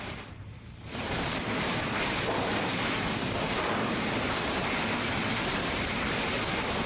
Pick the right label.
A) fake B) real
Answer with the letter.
A